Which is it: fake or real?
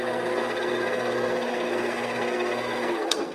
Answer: fake